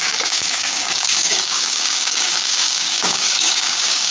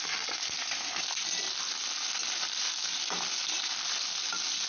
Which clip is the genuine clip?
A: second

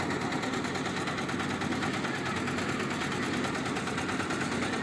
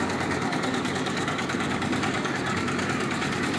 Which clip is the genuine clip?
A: first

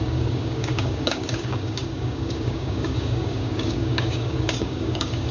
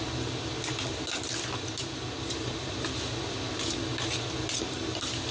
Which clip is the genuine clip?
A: second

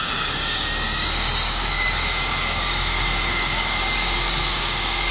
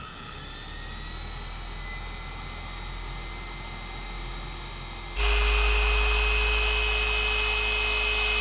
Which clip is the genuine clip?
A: second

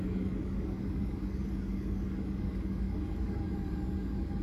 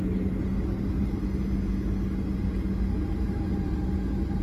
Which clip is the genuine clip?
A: second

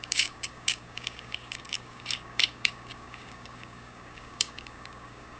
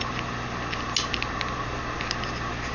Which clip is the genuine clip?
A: second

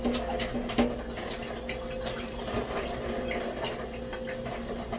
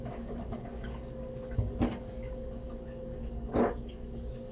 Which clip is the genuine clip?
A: first